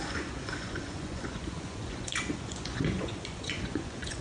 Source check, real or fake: fake